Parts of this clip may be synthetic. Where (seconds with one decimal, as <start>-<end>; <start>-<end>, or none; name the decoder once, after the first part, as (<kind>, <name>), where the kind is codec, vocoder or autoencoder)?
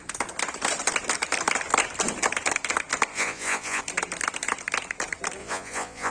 3.1-3.8 (vocoder, Vocos); 5.4-6.1